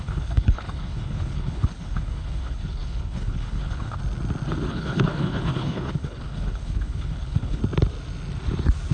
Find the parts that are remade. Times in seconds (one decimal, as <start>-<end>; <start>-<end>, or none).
0.0-4.0; 4.7-7.6

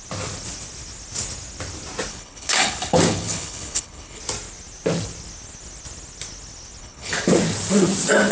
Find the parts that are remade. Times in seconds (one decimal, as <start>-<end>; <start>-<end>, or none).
2.1-4.2; 6.8-7.3